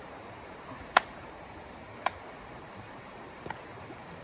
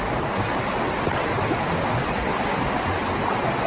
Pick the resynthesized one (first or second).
first